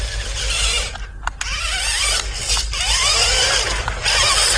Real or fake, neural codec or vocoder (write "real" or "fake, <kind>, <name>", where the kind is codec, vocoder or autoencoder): real